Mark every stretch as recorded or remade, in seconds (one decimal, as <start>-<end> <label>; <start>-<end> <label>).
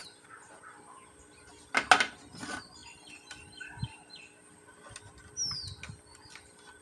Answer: 0.0-0.6 remade; 0.6-6.8 recorded